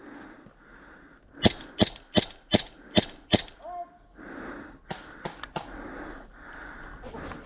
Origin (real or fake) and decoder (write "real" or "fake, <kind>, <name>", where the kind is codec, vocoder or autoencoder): real